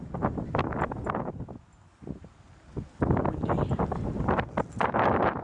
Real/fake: real